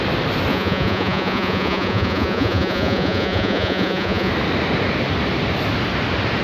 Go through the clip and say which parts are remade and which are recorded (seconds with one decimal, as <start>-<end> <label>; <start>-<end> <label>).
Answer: 0.0-0.5 recorded; 0.5-4.3 remade; 4.3-6.4 recorded